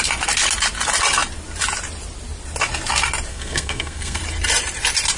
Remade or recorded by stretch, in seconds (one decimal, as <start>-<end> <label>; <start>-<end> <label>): 0.0-3.3 recorded; 3.3-4.2 remade; 4.2-5.2 recorded